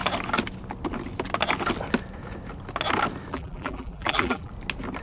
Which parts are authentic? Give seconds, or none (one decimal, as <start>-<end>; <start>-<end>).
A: 0.0-3.3; 4.5-5.0